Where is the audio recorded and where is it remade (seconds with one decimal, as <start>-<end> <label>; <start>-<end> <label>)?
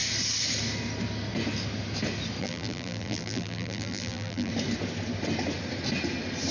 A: 0.0-2.4 recorded; 2.4-4.5 remade; 4.5-6.5 recorded